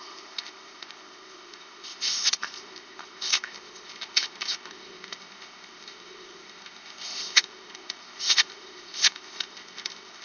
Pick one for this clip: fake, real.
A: fake